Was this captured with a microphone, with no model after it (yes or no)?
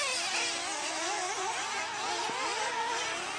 yes